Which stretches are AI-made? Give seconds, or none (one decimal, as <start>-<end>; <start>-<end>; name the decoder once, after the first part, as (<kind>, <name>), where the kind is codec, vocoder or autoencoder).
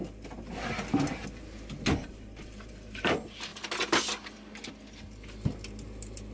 none